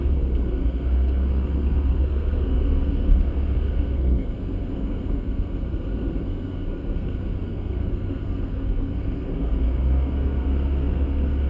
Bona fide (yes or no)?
no